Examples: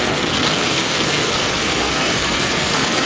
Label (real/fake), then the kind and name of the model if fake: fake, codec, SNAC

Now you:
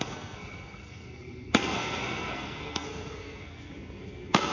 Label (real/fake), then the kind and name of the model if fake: fake, codec, SNAC